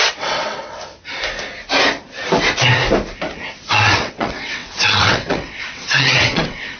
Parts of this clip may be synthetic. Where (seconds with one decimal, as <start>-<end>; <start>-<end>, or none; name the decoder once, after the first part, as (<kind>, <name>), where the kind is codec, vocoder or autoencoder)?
0.0-0.8 (vocoder, WaveNeXt); 3.7-6.8